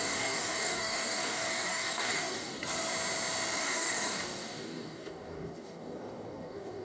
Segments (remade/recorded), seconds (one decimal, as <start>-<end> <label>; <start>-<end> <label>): 0.0-2.5 remade; 2.5-3.6 recorded; 3.6-6.8 remade